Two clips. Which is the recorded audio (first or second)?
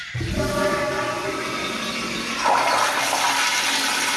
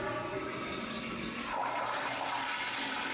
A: first